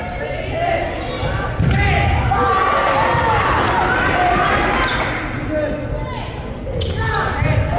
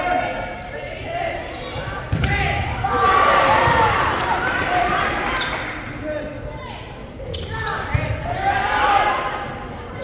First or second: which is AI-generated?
second